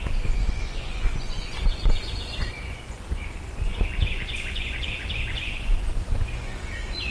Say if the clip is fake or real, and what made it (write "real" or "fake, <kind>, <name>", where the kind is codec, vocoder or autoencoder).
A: fake, vocoder, Vocos